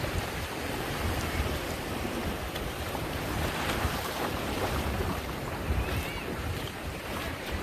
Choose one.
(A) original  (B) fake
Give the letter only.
B